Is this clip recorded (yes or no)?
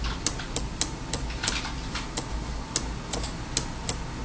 yes